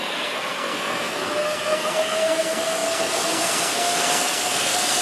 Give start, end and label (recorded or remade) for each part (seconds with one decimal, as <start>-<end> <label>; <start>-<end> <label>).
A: 0.0-5.0 remade